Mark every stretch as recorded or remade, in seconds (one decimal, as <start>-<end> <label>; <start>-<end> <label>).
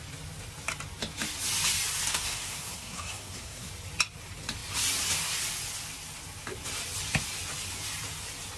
0.0-2.1 recorded; 2.1-3.7 remade; 3.7-8.6 recorded